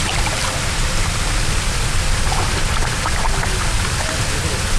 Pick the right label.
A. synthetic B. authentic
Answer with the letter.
B